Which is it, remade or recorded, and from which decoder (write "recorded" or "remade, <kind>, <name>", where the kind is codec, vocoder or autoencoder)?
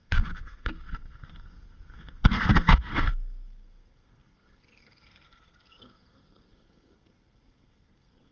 remade, codec, SNAC